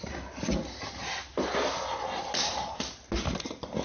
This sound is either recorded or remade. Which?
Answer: recorded